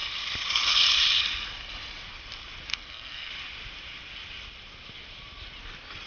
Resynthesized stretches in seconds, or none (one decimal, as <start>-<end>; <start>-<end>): 2.7-3.3